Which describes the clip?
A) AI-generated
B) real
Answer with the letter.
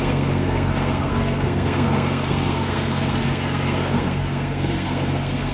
A